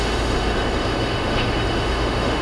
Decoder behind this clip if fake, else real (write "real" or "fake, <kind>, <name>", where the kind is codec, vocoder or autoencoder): fake, autoencoder, DAC-VAE